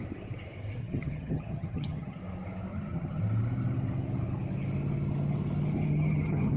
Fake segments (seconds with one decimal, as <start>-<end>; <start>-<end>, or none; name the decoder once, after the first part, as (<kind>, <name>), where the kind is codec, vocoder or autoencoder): 0.8-2.2 (vocoder, HiFi-GAN); 2.7-3.2; 5.9-6.6